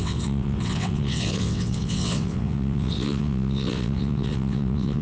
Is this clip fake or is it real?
fake